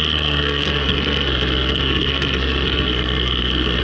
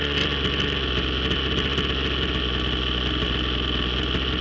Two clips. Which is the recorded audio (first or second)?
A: second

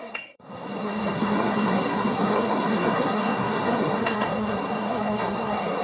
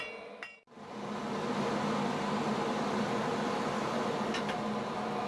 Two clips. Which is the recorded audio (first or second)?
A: second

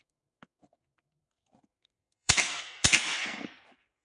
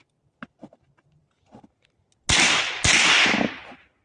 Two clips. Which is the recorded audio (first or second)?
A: second